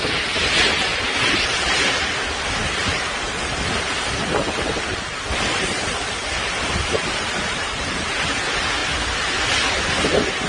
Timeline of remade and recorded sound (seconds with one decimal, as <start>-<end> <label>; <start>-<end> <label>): 0.0-0.9 recorded; 0.9-1.9 remade; 1.9-2.8 recorded; 2.8-8.1 remade; 8.1-10.5 recorded